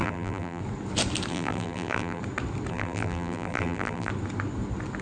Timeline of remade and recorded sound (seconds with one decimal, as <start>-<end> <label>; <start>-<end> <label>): 0.0-0.6 remade; 0.6-1.3 recorded; 1.3-2.2 remade; 2.2-2.7 recorded; 2.7-4.1 remade; 4.1-5.0 recorded